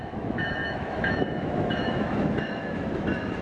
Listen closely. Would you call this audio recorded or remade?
remade